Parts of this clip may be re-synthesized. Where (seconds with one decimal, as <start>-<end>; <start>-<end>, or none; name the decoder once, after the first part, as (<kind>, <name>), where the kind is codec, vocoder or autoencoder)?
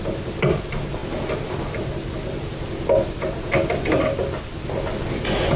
none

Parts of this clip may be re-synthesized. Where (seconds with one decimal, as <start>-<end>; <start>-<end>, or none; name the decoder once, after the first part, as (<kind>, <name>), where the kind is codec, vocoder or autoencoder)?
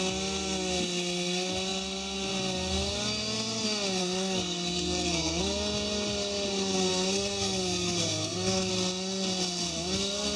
4.0-5.4 (codec, SNAC); 6.9-8.7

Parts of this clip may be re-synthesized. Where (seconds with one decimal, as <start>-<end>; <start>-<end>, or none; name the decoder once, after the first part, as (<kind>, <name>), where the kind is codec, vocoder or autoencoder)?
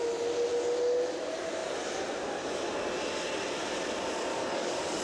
4.3-5.0 (codec, DAC)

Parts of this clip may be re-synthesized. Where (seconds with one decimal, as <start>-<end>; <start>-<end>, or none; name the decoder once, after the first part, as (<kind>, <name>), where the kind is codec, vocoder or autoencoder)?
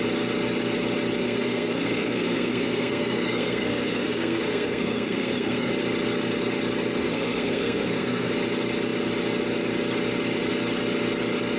1.2-5.7 (codec, SNAC); 7.0-8.3